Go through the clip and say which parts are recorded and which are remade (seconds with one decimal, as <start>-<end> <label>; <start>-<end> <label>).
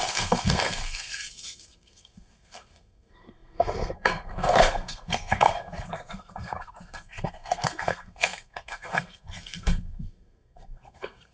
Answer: 0.0-11.3 remade